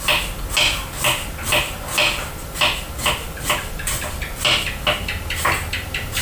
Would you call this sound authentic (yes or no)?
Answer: yes